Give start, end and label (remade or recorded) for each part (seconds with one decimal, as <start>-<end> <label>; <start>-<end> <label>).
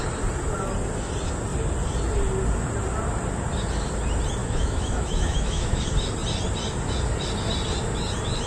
0.0-4.4 recorded; 4.4-5.8 remade; 5.8-8.5 recorded